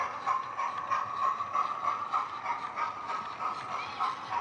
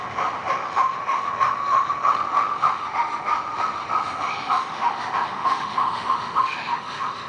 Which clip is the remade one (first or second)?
second